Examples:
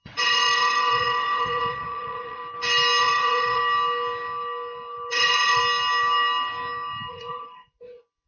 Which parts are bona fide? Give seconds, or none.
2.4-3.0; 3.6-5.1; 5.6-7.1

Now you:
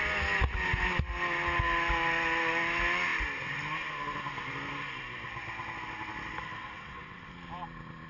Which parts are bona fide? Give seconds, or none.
0.0-6.6; 7.3-8.1

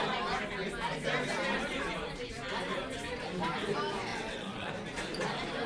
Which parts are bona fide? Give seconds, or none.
0.0-4.1; 4.7-5.7